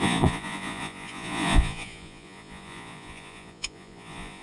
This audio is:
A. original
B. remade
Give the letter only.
B